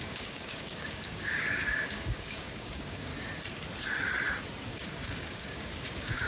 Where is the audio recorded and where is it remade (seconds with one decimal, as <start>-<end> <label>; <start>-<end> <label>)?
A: 0.0-3.1 remade; 3.1-4.7 recorded; 4.7-6.3 remade